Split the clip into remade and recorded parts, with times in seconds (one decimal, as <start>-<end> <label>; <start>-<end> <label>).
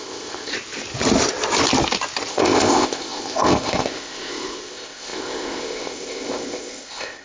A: 0.0-0.5 remade; 0.5-2.3 recorded; 2.3-7.2 remade